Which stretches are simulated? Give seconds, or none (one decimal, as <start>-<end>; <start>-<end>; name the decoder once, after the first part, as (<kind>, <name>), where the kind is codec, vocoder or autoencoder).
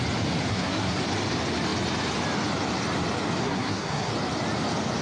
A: 0.5-1.0 (codec, SNAC); 3.4-4.1